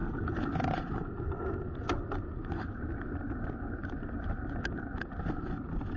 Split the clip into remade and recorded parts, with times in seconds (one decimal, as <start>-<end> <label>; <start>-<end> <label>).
0.0-6.0 recorded